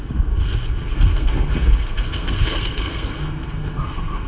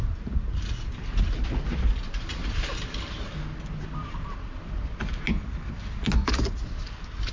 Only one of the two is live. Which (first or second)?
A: second